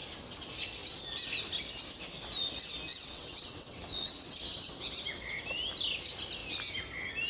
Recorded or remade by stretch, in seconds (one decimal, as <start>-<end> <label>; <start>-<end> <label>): 0.0-2.9 recorded; 2.9-4.7 remade; 4.7-7.3 recorded